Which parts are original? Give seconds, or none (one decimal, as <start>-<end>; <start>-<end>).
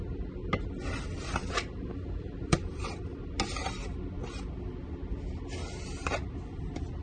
0.0-1.2; 2.9-6.0; 6.6-7.0